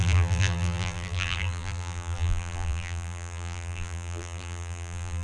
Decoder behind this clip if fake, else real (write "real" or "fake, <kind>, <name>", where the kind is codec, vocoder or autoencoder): fake, vocoder, BigVGAN v2